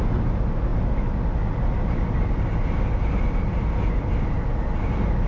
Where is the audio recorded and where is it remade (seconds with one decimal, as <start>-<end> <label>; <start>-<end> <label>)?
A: 0.0-5.3 recorded